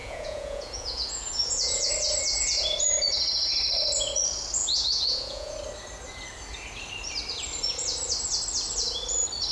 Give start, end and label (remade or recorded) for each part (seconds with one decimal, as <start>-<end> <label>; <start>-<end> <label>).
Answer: 0.0-1.9 remade; 1.9-4.6 recorded; 4.6-5.5 remade; 5.5-9.5 recorded